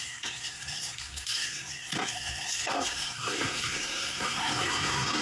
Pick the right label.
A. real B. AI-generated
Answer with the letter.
B